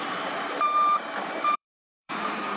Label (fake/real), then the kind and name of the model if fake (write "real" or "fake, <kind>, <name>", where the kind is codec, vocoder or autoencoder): fake, vocoder, BigVGAN v2